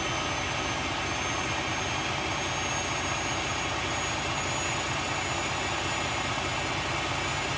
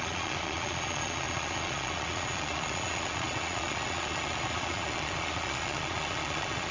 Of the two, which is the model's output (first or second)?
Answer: second